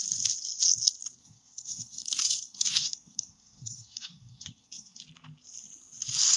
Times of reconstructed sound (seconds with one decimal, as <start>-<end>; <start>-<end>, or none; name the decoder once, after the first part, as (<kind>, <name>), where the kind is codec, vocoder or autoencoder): 1.2-5.0 (codec, SNAC)